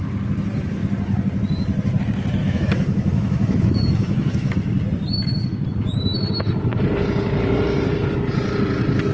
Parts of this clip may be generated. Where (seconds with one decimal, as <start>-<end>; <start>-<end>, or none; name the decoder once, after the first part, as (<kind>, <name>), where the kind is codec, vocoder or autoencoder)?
2.4-4.5 (autoencoder, DAC-VAE)